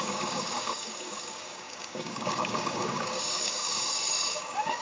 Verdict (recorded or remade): remade